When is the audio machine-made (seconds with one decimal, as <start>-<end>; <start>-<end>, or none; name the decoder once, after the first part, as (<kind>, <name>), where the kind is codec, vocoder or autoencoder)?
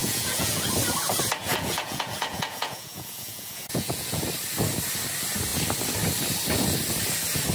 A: 0.0-0.7 (vocoder, Vocos); 1.4-4.2